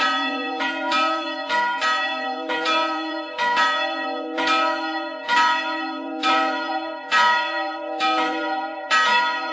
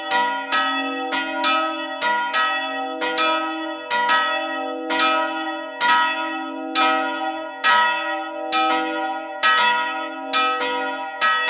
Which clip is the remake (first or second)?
first